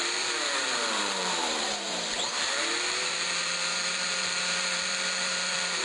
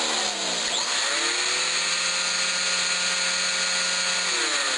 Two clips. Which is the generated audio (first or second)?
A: first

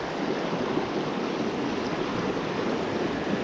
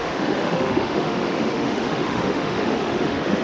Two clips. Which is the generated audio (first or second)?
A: second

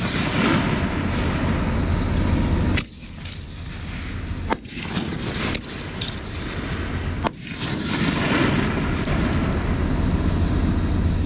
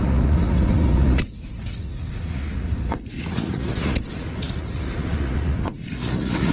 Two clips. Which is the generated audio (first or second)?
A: second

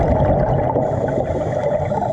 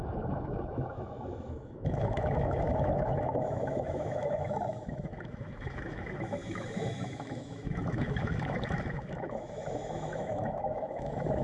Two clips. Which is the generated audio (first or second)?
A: second